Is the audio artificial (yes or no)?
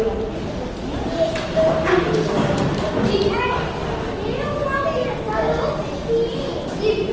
no